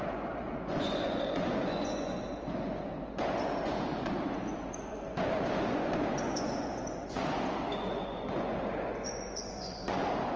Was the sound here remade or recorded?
remade